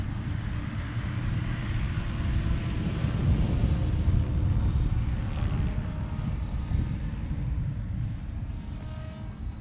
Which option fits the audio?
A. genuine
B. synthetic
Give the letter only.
A